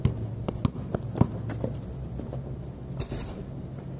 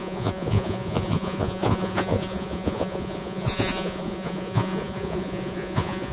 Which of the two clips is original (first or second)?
first